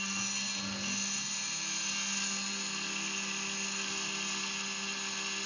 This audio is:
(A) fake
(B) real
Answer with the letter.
B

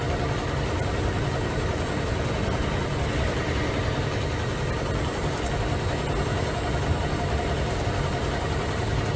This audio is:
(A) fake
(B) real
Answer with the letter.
B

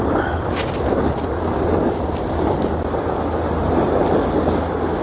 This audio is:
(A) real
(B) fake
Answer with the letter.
A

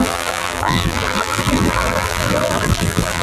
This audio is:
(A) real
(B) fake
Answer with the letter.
B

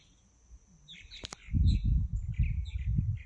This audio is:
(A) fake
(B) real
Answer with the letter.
B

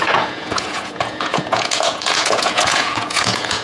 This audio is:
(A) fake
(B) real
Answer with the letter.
A